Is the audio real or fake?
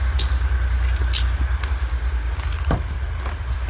real